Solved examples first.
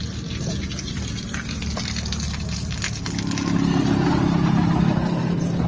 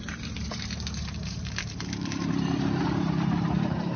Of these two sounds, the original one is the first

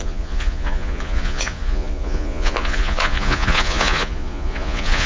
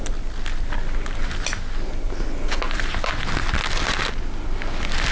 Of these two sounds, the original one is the second